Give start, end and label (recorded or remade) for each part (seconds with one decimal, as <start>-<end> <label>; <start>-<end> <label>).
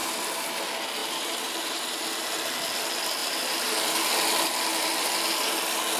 0.0-0.6 remade; 0.6-1.0 recorded; 1.0-2.0 remade; 2.0-3.2 recorded; 3.2-5.1 remade; 5.1-6.0 recorded